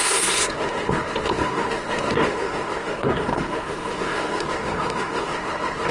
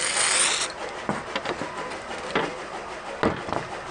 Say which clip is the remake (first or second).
first